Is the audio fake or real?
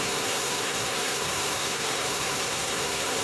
fake